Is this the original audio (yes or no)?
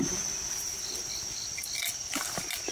yes